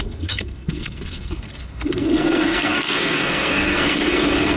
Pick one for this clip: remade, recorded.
remade